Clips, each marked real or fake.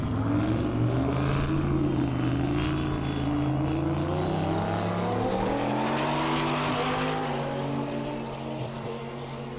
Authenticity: real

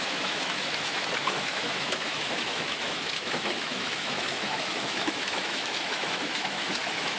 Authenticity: fake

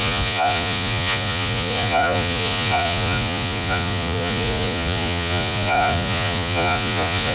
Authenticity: fake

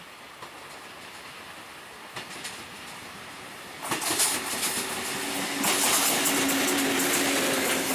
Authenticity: real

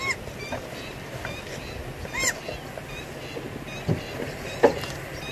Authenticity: real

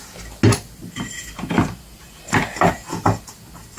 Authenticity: real